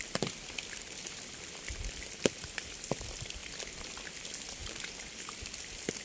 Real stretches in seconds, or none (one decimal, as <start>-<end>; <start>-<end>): 0.0-6.0